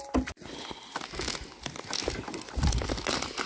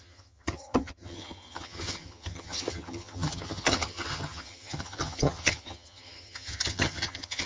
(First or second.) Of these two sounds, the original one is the first